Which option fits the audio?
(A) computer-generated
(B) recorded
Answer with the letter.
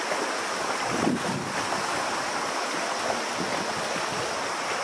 B